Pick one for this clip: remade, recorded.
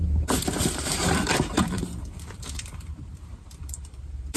remade